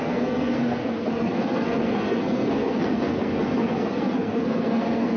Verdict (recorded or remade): remade